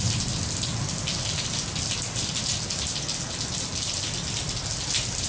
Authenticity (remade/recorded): recorded